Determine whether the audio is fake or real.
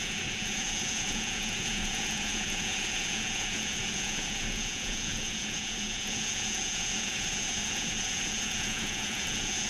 fake